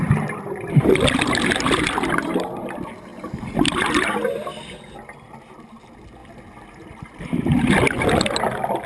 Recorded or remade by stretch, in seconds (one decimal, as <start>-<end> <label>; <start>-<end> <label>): 0.0-8.9 recorded